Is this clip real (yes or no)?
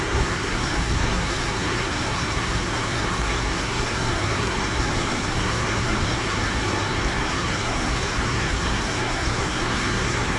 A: no